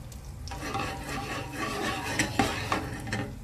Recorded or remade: recorded